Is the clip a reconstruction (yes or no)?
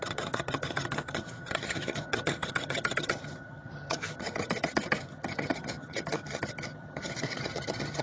yes